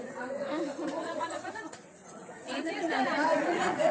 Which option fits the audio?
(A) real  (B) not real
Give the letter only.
B